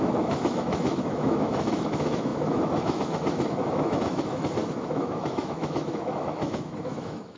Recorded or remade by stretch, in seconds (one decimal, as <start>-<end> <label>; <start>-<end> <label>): 0.0-7.4 remade